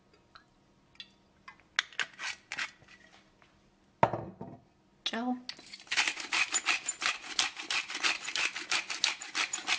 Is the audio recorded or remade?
recorded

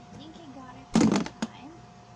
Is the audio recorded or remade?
recorded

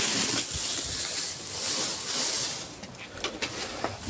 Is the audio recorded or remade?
remade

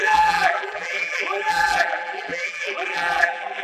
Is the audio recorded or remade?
remade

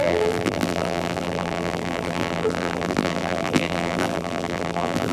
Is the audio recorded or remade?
remade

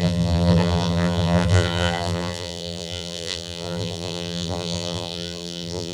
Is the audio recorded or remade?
remade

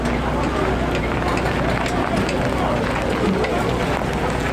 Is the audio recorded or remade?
recorded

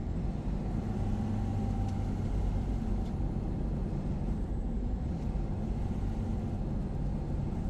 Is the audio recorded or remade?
recorded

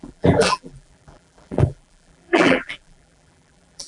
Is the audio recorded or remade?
remade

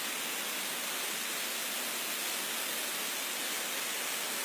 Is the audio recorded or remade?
recorded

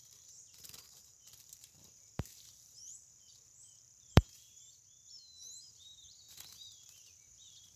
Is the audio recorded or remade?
remade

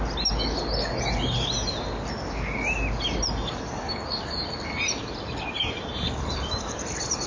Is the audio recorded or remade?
recorded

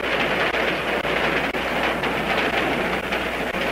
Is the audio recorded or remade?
recorded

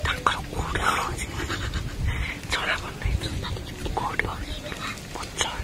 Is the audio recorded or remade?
recorded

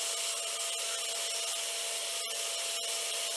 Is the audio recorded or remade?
recorded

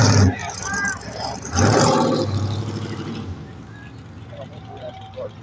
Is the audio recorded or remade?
remade